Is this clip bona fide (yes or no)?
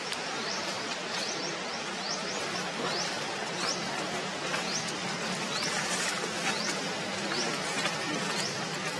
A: no